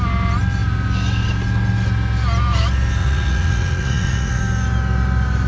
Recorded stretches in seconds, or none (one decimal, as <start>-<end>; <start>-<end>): 0.0-3.0; 4.4-5.5